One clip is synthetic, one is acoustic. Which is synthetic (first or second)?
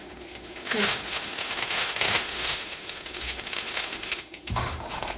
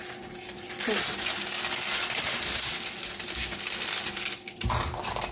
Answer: first